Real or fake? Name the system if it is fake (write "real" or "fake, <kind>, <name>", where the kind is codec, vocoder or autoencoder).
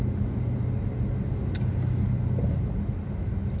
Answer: real